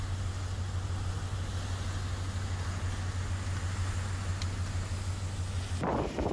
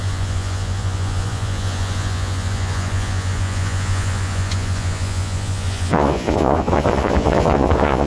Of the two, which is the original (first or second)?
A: first